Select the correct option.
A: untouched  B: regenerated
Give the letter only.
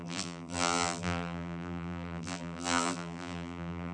B